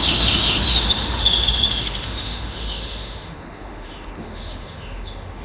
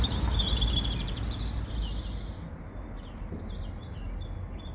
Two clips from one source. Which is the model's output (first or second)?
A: first